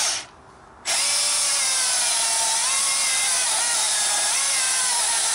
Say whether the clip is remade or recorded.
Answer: recorded